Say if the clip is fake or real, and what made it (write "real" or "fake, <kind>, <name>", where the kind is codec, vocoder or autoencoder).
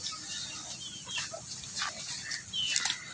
real